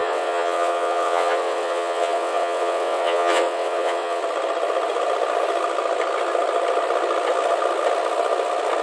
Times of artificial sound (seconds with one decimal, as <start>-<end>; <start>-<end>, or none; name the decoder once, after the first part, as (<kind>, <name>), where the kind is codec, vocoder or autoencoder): 0.0-4.2 (vocoder, WaveNeXt)